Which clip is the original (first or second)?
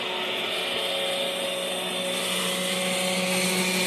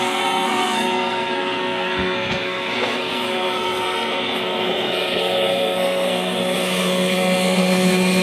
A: first